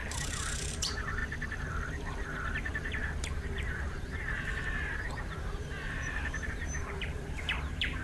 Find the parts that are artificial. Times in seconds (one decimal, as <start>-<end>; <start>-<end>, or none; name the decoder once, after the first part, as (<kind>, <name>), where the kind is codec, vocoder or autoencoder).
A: 0.0-8.0 (vocoder, BigVGAN v2)